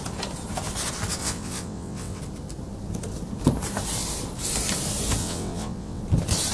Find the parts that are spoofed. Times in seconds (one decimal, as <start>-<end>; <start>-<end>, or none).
1.2-2.2; 5.2-6.0